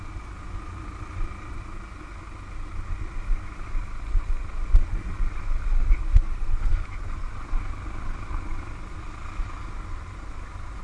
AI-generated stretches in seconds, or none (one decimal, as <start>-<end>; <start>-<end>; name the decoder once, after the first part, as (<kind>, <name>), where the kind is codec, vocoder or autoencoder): none